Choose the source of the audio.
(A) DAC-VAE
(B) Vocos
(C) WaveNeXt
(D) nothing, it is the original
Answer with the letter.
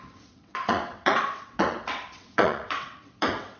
C